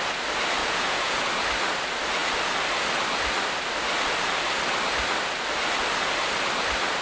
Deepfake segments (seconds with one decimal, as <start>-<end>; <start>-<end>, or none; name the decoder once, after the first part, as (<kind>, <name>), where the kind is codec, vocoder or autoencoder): 0.6-1.2 (vocoder, Vocos)